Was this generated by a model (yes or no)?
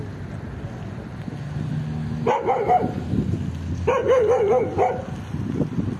no